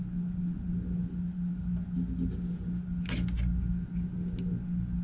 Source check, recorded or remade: recorded